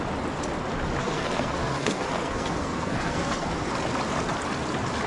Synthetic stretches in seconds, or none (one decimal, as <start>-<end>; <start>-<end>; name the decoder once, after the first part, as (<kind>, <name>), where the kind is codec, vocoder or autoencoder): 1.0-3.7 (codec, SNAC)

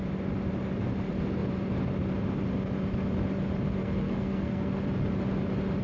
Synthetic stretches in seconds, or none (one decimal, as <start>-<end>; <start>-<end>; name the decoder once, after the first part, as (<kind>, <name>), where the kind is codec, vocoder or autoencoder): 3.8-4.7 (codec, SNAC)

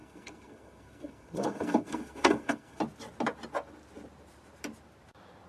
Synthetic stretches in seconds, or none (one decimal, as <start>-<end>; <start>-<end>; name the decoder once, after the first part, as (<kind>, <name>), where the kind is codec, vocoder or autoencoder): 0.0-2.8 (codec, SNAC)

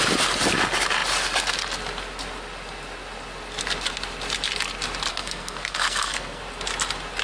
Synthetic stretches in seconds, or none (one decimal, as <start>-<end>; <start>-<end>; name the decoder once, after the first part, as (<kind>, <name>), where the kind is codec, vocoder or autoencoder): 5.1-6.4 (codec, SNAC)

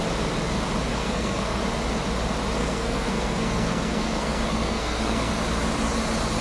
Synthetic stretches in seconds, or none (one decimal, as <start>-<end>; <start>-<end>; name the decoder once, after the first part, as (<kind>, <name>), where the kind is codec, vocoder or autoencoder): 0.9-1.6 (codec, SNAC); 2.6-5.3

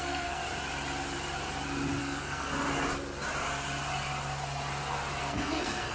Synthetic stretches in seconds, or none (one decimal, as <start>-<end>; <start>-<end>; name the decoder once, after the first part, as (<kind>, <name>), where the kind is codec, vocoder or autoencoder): 0.0-0.4 (codec, SNAC); 2.0-2.5; 5.2-5.9

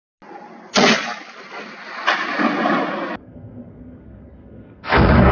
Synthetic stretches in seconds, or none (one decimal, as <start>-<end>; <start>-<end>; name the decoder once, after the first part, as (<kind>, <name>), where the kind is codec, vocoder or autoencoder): 3.2-5.3 (codec, SNAC)

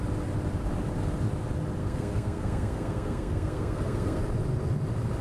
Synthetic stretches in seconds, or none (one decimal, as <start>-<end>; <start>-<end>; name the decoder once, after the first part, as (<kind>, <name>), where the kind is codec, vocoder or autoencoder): 1.8-4.2 (codec, SNAC)